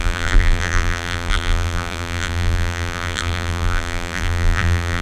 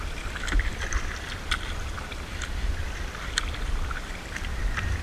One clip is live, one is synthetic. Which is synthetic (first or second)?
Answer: first